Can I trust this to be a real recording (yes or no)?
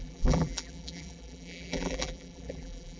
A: no